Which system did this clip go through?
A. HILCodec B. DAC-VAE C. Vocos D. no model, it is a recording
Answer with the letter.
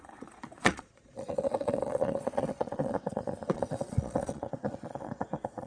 C